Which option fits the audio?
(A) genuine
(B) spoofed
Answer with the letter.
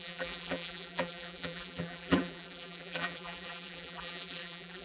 B